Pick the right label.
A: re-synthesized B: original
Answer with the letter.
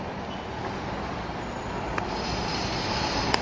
B